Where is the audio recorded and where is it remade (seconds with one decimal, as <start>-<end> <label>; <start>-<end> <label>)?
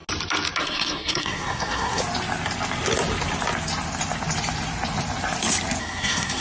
0.0-0.6 recorded; 0.6-2.0 remade; 2.0-5.8 recorded; 5.8-6.4 remade